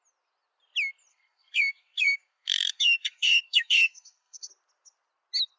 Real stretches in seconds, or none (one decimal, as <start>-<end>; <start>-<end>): 0.0-1.1; 4.5-5.6